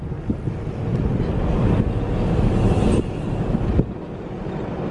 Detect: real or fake real